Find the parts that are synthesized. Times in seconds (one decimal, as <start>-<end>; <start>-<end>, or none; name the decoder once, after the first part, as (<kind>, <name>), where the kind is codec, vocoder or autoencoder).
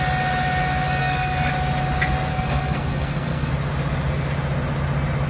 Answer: 1.0-1.5 (codec, SNAC); 2.3-3.5